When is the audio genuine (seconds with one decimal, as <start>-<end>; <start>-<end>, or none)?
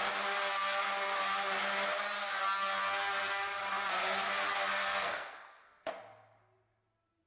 0.0-4.8; 5.9-7.3